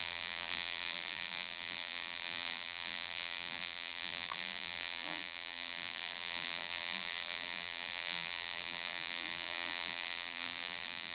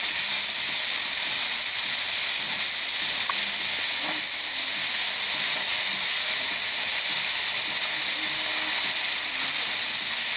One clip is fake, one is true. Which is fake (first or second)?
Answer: first